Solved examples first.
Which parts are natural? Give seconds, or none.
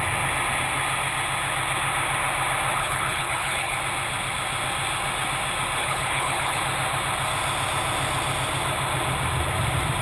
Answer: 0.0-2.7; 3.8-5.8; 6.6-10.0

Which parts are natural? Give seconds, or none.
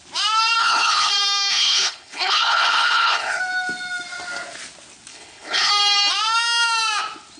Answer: 0.0-0.6; 1.1-1.5; 3.4-5.1; 5.7-7.4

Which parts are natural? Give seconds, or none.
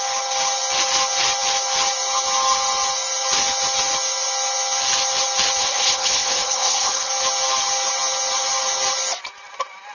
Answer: 0.0-5.6; 7.1-9.9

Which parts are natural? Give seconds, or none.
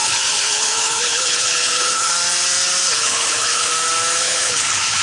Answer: 2.1-2.9; 3.7-4.2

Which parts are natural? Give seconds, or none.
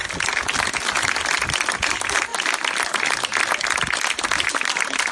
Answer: 0.0-5.1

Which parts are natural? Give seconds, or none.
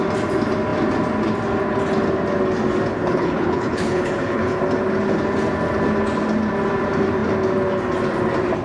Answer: 0.0-2.9; 4.6-8.6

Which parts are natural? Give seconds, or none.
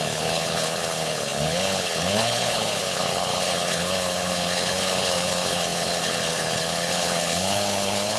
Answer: none